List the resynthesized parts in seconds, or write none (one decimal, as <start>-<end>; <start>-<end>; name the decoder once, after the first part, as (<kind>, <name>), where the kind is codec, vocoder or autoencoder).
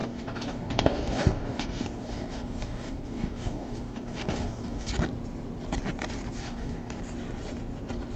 0.0-4.9 (codec, DAC); 6.4-7.0